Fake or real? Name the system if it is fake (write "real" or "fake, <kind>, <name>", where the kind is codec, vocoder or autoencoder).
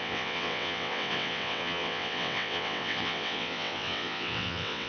fake, vocoder, WaveNeXt